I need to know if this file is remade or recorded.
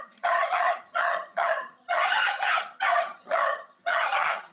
remade